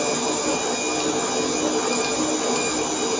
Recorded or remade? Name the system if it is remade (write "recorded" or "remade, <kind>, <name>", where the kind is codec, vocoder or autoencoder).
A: recorded